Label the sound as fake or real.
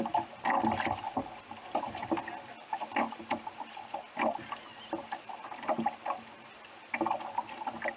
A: real